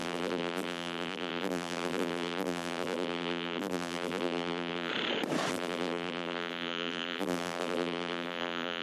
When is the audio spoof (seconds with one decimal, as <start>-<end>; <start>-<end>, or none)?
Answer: 0.0-4.9; 5.5-8.8